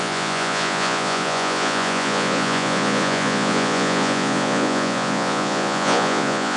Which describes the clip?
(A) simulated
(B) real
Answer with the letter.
A